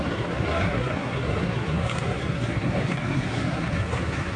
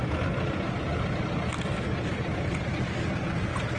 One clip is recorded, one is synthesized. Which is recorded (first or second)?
second